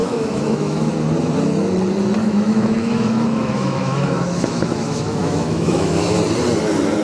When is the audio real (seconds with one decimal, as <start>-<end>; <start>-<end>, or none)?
0.9-2.2; 6.2-7.0